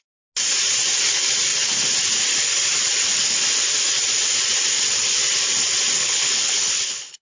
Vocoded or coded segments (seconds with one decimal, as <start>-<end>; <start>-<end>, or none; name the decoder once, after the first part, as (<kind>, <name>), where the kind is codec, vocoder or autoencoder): 6.0-7.2 (codec, HILCodec)

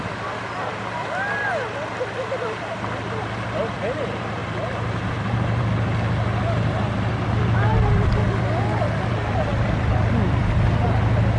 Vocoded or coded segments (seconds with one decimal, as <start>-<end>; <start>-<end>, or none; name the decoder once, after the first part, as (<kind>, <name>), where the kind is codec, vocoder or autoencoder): 4.4-5.6 (vocoder, BigVGAN v2)

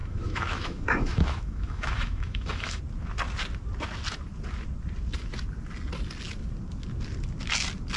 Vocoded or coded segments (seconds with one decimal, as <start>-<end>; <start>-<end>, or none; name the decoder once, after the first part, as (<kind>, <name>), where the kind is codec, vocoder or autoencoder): 0.0-2.8 (autoencoder, DAC-VAE)

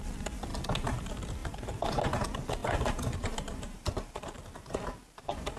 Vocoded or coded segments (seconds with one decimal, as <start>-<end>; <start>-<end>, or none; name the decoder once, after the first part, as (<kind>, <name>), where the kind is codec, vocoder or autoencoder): 1.4-2.0 (vocoder, BigVGAN v2); 2.6-5.6

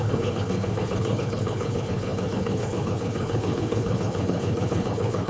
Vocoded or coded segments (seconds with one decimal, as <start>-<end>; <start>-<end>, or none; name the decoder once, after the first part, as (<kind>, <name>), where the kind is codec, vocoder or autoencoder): 0.0-5.3 (codec, HILCodec)

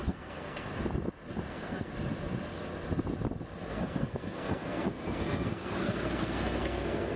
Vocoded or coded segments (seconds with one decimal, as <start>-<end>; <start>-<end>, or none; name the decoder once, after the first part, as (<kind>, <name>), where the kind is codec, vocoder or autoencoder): 0.0-0.7 (codec, SNAC); 1.5-1.9; 3.7-7.2

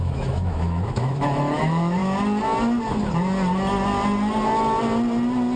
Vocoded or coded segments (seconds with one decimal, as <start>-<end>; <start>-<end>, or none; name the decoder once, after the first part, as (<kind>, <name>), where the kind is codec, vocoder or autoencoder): 0.0-2.0 (autoencoder, DAC-VAE)